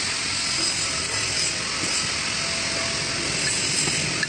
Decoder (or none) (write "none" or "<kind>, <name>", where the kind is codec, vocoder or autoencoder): none